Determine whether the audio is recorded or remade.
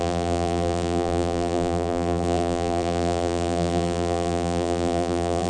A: remade